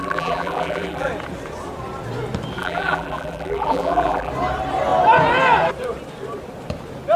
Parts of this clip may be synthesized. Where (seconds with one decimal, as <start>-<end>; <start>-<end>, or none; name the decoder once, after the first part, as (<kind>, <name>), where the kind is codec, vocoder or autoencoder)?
0.0-1.1 (vocoder, BigVGAN v2); 2.6-4.3